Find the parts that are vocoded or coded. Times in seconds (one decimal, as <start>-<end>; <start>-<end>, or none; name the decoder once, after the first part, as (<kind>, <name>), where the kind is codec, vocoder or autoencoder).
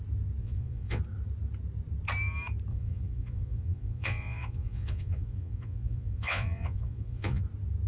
0.4-1.0 (vocoder, Vocos); 2.7-7.4